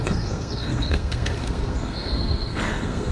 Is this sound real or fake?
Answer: fake